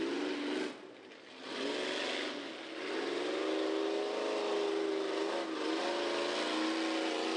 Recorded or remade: recorded